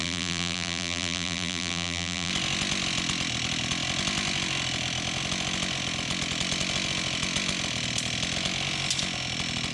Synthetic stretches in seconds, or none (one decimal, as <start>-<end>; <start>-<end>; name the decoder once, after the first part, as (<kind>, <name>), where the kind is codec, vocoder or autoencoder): 0.0-2.3 (vocoder, BigVGAN v2)